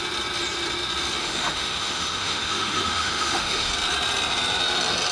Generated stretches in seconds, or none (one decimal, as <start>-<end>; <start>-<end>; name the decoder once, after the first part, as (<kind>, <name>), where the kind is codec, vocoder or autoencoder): 1.2-3.7 (autoencoder, DAC-VAE)